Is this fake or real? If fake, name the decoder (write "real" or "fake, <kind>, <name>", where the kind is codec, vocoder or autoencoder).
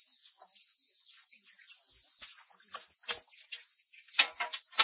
real